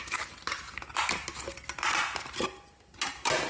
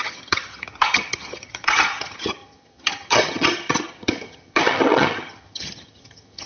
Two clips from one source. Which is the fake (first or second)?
second